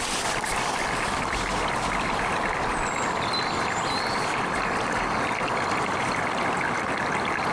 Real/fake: real